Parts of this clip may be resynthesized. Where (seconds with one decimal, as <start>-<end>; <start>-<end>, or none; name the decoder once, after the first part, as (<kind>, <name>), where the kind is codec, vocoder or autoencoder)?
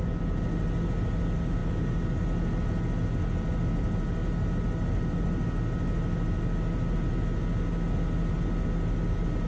none